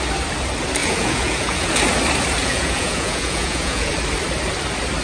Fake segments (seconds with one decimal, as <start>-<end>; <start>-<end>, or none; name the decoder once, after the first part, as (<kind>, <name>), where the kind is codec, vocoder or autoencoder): 0.8-1.7 (vocoder, Vocos); 2.4-3.9